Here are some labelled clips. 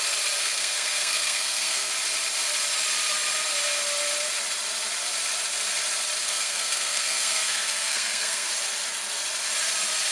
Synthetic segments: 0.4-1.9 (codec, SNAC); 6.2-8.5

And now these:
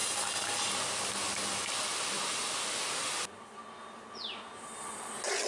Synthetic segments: none

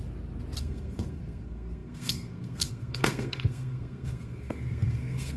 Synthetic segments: 0.6-5.4 (codec, SNAC)

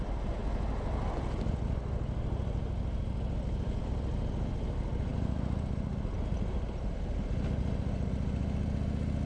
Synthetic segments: none

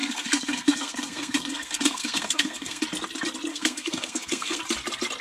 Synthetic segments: 0.0-2.8 (codec, SNAC); 3.5-4.6

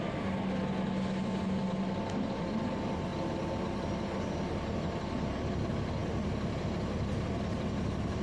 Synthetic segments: none